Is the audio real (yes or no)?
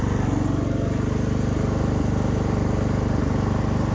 yes